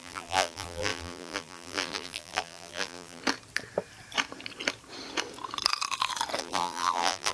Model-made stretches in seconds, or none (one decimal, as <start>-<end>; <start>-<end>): 0.0-3.2; 6.4-7.3